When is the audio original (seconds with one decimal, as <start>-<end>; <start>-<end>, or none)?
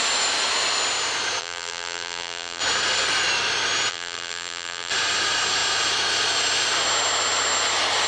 0.0-1.4; 2.6-3.9; 4.9-8.1